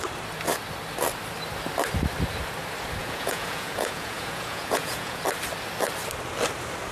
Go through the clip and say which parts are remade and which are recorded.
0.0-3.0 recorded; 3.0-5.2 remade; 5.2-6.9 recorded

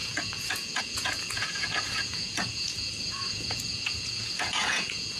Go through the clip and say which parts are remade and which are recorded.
0.0-5.2 remade

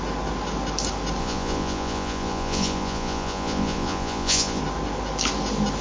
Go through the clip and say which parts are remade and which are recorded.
0.0-1.2 recorded; 1.2-4.6 remade; 4.6-5.8 recorded